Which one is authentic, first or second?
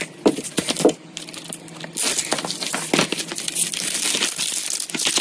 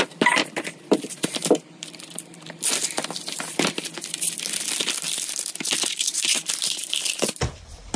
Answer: first